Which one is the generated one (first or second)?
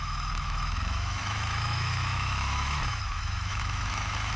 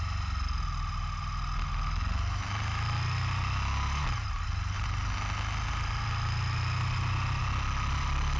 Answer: first